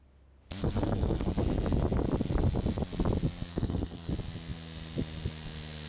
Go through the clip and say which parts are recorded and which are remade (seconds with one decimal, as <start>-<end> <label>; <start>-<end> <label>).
0.0-0.6 recorded; 0.6-1.3 remade; 1.3-3.5 recorded; 3.5-4.1 remade; 4.1-5.9 recorded